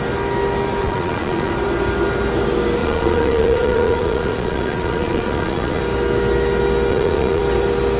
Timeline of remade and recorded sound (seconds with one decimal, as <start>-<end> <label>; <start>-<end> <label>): 0.0-0.8 recorded; 0.8-1.5 remade; 1.5-2.8 recorded; 2.8-5.8 remade; 5.8-6.9 recorded; 6.9-7.4 remade; 7.4-8.0 recorded